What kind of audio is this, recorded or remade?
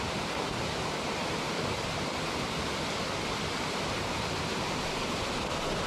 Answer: recorded